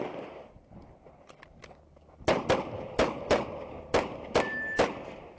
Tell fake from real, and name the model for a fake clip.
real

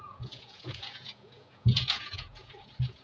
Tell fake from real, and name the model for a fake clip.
fake, vocoder, Vocos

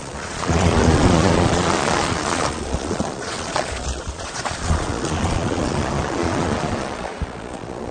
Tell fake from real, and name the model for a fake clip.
fake, vocoder, Vocos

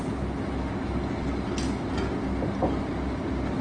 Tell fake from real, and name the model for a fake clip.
real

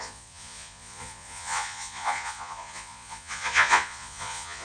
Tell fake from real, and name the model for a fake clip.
fake, vocoder, Vocos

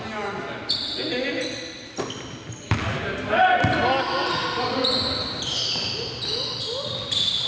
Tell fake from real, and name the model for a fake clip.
real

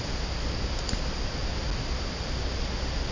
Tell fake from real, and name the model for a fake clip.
real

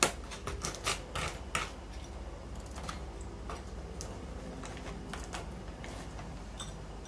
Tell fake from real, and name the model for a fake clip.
real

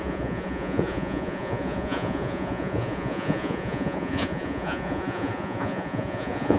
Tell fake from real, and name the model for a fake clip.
fake, vocoder, Vocos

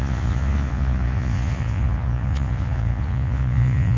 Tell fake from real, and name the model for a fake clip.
fake, vocoder, Vocos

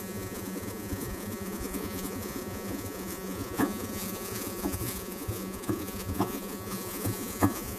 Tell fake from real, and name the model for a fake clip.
fake, vocoder, Vocos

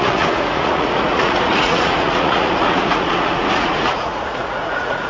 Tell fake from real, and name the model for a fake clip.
fake, vocoder, Vocos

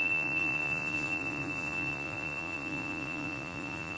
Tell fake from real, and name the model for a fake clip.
fake, vocoder, Vocos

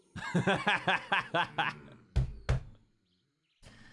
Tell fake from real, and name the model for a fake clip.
real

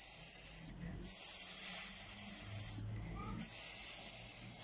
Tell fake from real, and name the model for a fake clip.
real